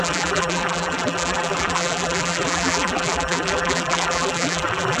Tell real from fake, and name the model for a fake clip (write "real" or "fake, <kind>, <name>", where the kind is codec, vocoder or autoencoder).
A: fake, vocoder, BigVGAN v2